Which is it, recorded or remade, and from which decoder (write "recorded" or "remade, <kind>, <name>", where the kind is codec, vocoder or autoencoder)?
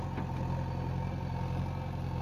recorded